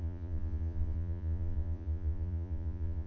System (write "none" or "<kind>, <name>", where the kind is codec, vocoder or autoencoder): vocoder, Vocos